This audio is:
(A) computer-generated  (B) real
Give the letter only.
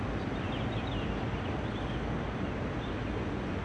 B